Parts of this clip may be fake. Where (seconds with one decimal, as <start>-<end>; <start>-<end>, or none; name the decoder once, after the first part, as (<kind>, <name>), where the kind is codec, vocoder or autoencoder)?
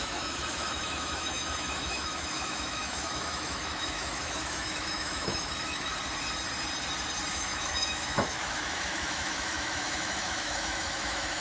0.0-5.9 (autoencoder, DAC-VAE); 7.3-11.4